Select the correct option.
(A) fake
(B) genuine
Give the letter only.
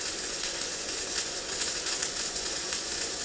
A